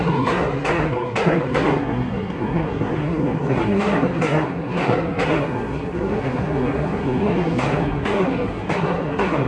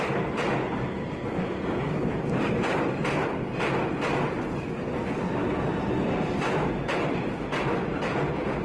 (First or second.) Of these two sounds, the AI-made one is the first